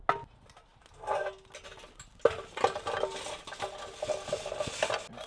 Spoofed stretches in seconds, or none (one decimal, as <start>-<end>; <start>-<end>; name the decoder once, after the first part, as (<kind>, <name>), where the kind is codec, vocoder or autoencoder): none